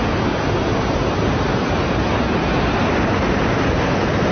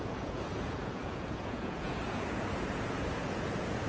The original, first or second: first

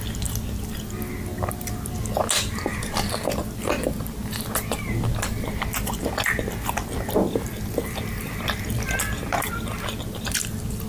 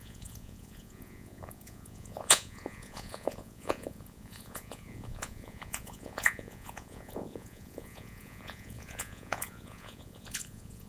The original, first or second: first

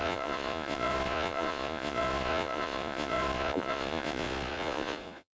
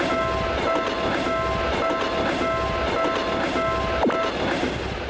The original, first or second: second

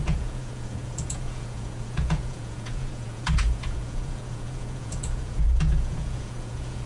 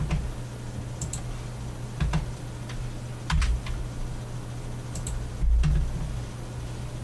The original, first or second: second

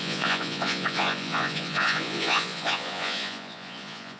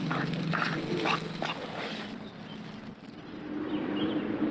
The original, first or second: second